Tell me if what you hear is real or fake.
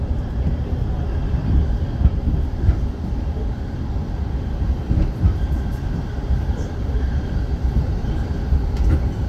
fake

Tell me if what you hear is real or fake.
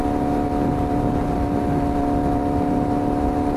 real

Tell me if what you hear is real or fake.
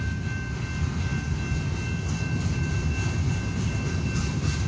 real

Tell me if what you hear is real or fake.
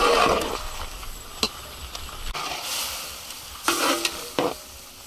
real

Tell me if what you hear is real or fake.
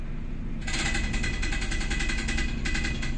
real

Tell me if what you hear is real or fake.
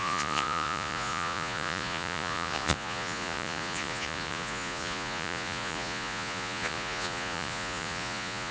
fake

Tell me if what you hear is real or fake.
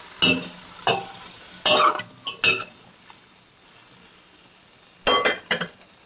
real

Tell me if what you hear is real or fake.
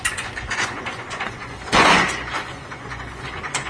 fake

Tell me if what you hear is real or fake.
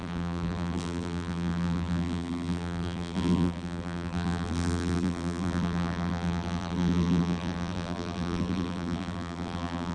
fake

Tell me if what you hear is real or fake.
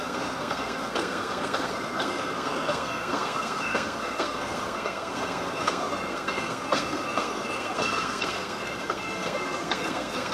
fake